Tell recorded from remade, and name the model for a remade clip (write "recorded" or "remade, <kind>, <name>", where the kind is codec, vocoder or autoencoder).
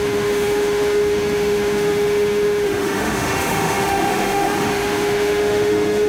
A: remade, autoencoder, DAC-VAE